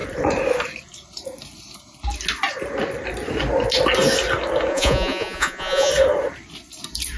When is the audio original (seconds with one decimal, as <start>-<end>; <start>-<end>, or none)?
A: 0.0-4.7; 5.9-7.2